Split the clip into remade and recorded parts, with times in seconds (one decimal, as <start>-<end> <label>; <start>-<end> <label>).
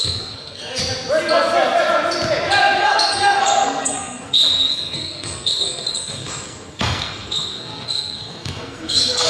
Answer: 0.0-0.8 remade; 0.8-2.8 recorded; 2.8-9.3 remade